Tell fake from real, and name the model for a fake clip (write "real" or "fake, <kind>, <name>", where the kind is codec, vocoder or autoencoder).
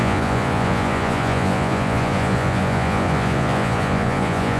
fake, vocoder, Vocos